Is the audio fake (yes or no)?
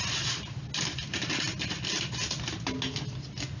no